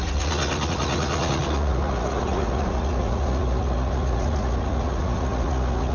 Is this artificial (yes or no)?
yes